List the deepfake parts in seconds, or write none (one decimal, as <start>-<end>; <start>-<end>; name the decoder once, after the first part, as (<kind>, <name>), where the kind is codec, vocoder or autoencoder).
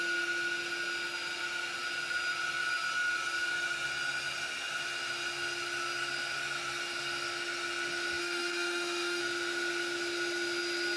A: 8.2-9.2 (autoencoder, DAC-VAE)